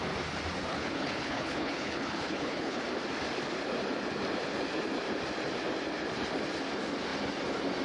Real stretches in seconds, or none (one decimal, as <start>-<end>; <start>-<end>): 0.0-0.7; 2.8-7.8